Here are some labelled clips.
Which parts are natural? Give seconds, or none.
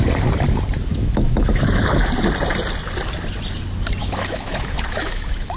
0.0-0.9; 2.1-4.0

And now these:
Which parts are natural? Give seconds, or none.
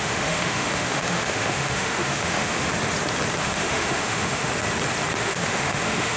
2.7-3.4; 4.5-5.2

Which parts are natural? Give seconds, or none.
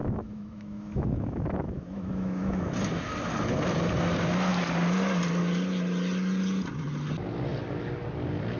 2.7-8.6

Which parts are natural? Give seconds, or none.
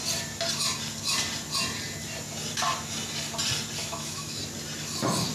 0.0-3.8; 4.4-5.3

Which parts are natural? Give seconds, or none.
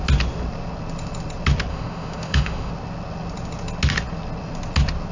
0.0-1.7; 2.7-5.1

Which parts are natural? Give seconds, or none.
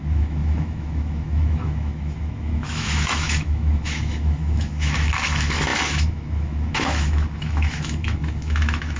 none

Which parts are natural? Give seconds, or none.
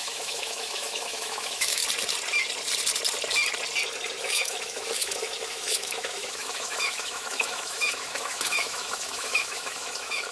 1.8-4.2